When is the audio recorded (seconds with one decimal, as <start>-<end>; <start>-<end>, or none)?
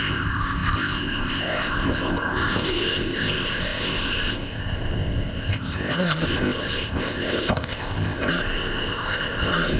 none